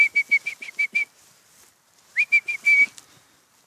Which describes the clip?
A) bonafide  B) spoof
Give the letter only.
A